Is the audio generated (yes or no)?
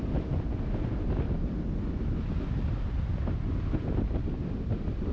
no